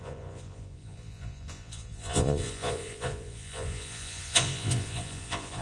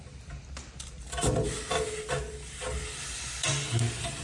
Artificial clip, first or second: first